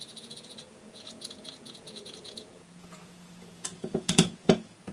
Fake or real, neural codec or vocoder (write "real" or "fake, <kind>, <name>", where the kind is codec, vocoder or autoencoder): fake, vocoder, Vocos